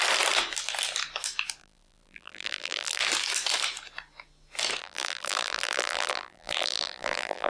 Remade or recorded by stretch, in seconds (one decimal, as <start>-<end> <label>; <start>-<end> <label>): 0.0-1.6 recorded; 1.6-3.0 remade; 3.0-4.8 recorded; 4.8-7.5 remade